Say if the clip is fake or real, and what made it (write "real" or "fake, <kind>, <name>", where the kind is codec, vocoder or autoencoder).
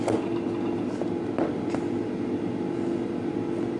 real